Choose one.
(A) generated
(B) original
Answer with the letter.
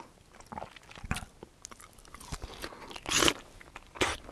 B